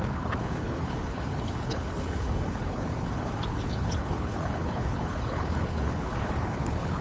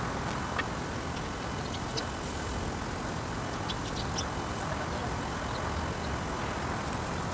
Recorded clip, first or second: second